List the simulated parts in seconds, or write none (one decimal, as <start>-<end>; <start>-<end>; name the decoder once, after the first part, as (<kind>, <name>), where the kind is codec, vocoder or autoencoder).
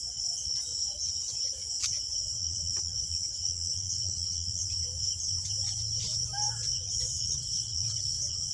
0.0-0.7 (vocoder, Vocos); 2.2-4.6; 6.7-8.5